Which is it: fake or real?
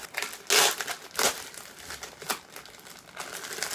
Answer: real